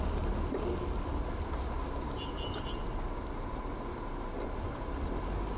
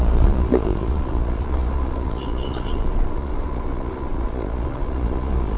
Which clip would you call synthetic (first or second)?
second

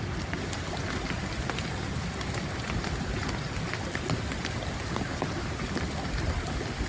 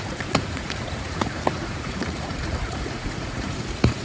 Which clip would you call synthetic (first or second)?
second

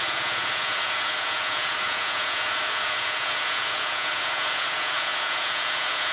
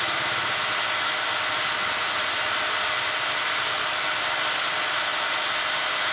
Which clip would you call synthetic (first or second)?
first